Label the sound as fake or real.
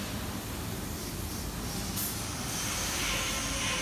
real